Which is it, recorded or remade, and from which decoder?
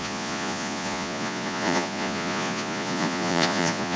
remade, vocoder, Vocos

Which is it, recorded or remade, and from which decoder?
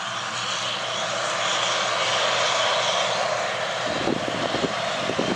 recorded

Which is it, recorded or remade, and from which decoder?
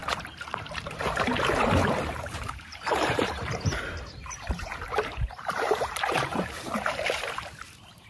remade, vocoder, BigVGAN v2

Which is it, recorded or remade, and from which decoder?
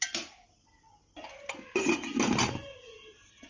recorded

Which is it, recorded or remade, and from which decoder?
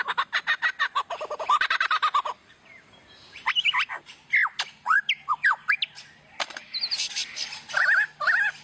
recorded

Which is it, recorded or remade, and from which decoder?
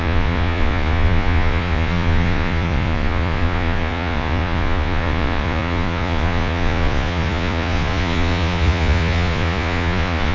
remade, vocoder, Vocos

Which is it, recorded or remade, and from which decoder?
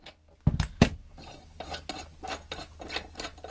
recorded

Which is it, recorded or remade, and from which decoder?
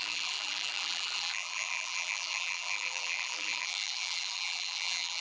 remade, vocoder, BigVGAN v2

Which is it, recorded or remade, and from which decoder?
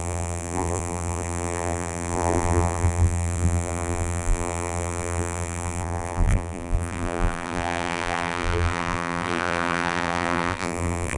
remade, vocoder, BigVGAN v2